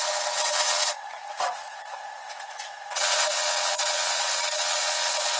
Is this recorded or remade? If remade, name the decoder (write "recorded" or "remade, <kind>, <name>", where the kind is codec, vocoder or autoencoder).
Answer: remade, vocoder, WaveNeXt